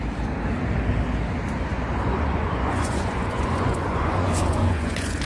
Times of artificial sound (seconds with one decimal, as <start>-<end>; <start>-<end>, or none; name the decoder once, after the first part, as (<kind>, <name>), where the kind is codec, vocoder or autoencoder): 1.7-5.3 (vocoder, Vocos)